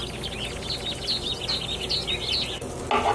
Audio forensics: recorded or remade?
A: recorded